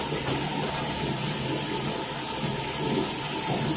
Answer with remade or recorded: recorded